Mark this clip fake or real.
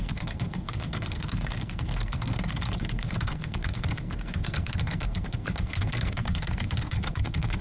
fake